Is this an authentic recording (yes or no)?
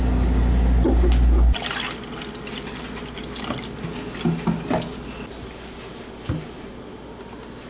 yes